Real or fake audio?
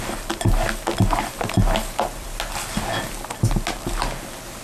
real